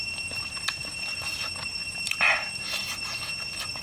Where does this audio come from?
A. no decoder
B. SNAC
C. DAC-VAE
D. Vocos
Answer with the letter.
A